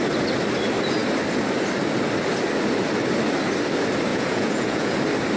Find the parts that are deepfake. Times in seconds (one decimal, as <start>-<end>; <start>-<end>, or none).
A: 4.1-4.9